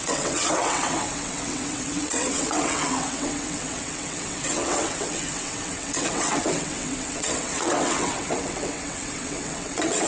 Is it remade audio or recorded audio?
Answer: remade